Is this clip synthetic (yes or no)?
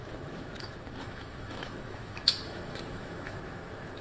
yes